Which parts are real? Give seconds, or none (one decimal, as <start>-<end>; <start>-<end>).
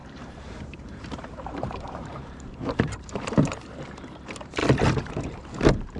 3.5-6.0